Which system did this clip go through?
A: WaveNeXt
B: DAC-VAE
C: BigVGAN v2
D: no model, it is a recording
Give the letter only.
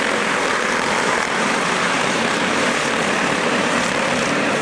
C